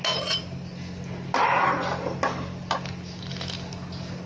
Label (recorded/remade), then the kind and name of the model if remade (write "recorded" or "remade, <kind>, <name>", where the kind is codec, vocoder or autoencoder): recorded